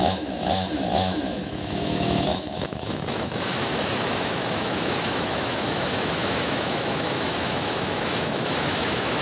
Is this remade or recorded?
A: remade